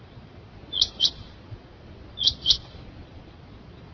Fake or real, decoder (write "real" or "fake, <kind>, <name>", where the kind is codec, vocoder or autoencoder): fake, vocoder, Vocos